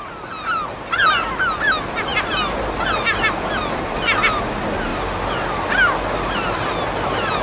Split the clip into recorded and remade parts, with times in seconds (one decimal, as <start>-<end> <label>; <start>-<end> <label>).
0.0-7.4 recorded